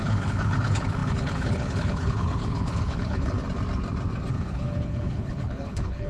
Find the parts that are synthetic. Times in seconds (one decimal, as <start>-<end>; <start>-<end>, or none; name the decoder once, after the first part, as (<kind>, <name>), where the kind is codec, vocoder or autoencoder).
0.0-3.4 (codec, HILCodec); 4.3-6.1